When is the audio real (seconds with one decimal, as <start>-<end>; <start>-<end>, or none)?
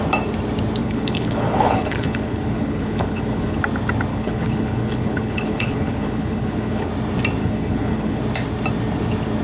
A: 0.0-0.8; 3.6-4.1; 6.9-7.4; 8.2-9.4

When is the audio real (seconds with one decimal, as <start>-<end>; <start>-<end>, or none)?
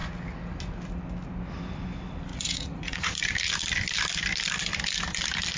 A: 0.0-2.3; 3.2-5.6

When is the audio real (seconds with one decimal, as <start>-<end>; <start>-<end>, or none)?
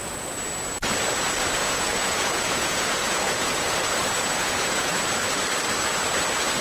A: 0.0-1.6; 4.9-6.6